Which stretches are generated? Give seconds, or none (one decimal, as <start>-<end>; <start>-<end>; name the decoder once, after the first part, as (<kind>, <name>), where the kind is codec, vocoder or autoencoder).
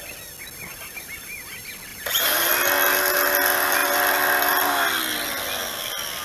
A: 0.7-1.5 (vocoder, BigVGAN v2); 1.9-2.5